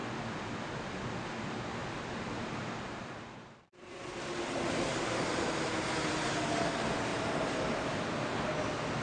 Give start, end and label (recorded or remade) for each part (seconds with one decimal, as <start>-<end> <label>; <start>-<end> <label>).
0.0-1.8 recorded; 1.8-5.4 remade; 5.4-7.1 recorded; 7.1-8.0 remade; 8.0-9.0 recorded